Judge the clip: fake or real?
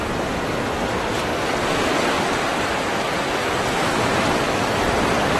real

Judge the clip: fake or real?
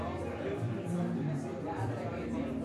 fake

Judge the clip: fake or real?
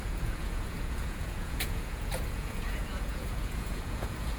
fake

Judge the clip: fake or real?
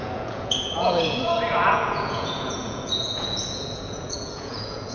fake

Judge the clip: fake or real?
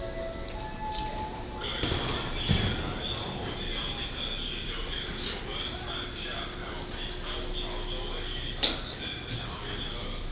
real